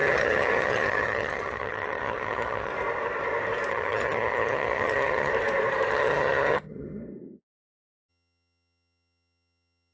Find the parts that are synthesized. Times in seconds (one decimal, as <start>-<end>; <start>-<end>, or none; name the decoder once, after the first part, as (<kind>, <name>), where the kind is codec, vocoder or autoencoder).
0.0-2.7 (vocoder, HiFi-GAN); 3.7-5.3; 5.9-7.0; 8.1-9.9